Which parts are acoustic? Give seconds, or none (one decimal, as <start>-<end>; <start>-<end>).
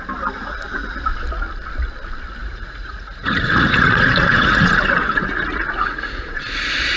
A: 0.0-0.4; 1.0-2.4; 6.6-7.0